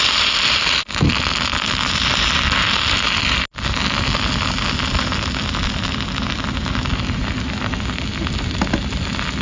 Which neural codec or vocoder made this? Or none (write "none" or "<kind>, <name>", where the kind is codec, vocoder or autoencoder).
none